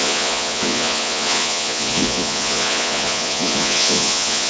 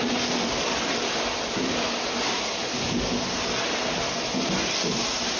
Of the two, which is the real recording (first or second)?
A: second